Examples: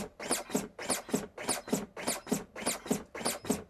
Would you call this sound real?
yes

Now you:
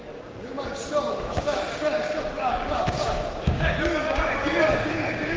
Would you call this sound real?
no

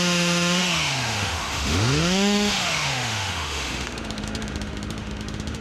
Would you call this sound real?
no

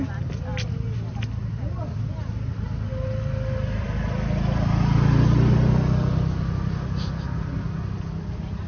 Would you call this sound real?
yes